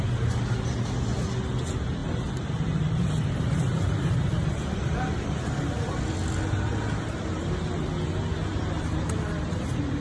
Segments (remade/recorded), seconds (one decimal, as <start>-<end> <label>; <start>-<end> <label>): 0.0-2.0 recorded; 2.0-6.0 remade; 6.0-8.5 recorded; 8.5-10.0 remade